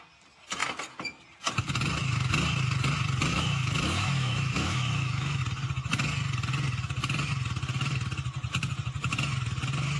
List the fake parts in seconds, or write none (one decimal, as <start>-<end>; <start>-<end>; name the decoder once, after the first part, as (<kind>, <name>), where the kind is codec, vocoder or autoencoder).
3.3-5.4 (autoencoder, DAC-VAE)